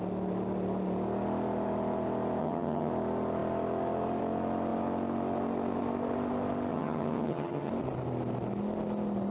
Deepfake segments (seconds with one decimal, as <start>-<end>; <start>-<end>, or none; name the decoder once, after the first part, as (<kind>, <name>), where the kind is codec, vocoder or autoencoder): 2.4-2.9 (vocoder, HiFi-GAN); 6.7-7.7